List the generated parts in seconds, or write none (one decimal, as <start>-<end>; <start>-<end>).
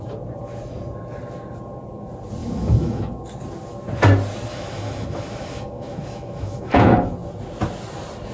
2.4-3.1; 4.5-6.8